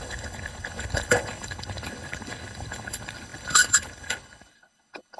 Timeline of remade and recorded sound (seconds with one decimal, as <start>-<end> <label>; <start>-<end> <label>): 0.0-5.2 remade